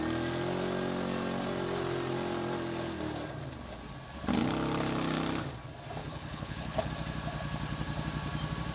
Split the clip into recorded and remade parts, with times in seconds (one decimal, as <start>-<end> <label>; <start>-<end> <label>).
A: 0.0-6.0 recorded; 6.0-6.9 remade; 6.9-8.7 recorded